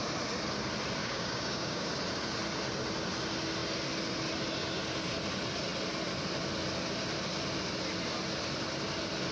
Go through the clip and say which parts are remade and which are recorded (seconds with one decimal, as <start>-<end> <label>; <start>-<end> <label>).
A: 0.0-1.0 recorded; 1.0-1.9 remade; 1.9-9.3 recorded